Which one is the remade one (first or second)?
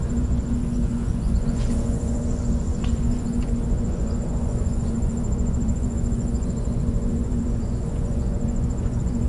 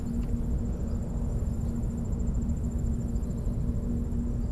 first